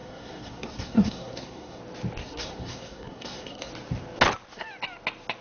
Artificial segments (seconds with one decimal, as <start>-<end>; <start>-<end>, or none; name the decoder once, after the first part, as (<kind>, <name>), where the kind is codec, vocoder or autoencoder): 0.0-1.8 (codec, SNAC); 2.2-3.7